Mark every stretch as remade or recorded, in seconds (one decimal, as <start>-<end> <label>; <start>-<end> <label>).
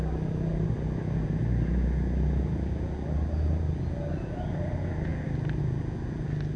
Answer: 0.0-6.6 recorded